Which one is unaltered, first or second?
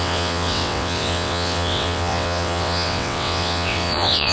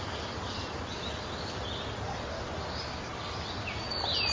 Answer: second